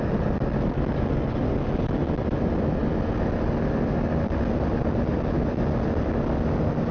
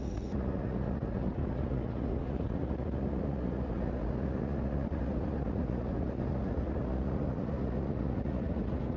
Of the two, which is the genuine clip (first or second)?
first